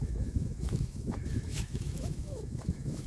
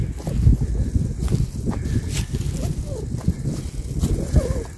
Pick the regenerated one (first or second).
first